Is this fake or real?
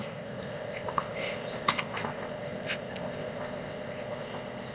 fake